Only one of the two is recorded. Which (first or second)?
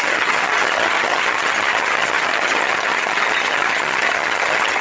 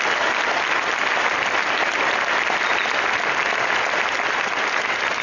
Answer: second